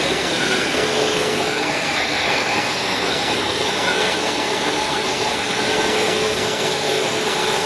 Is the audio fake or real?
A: fake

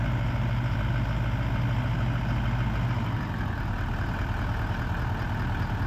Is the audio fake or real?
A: real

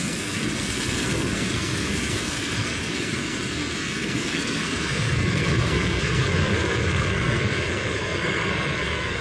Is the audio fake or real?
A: fake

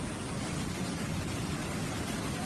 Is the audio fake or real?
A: real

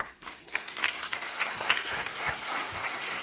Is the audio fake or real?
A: fake